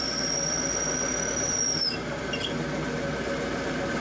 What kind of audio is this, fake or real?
real